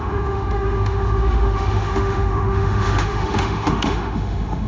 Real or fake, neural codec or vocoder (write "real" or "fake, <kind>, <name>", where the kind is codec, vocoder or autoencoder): fake, autoencoder, DAC-VAE